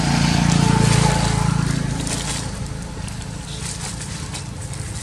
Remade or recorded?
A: recorded